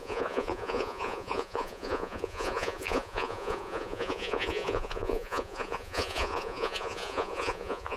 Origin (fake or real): fake